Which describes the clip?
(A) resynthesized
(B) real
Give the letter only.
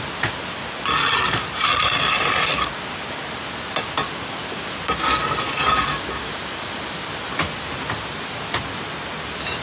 B